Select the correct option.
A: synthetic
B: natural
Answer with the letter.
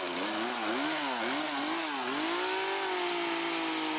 B